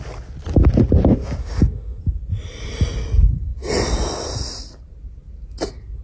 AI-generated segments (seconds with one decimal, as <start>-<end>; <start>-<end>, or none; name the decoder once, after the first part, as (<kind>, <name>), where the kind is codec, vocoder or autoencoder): 1.4-2.0 (autoencoder, DAC-VAE)